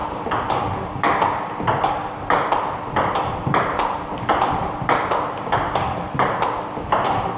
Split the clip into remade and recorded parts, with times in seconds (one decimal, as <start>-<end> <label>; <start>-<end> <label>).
0.0-7.4 recorded

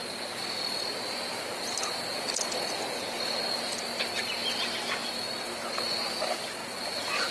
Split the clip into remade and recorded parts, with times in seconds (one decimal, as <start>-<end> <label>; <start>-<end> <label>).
0.0-7.3 recorded

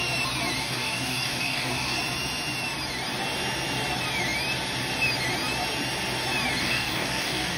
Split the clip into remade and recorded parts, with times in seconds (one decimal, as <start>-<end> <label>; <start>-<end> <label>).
0.0-0.6 recorded; 0.6-2.0 remade; 2.0-6.6 recorded; 6.6-7.6 remade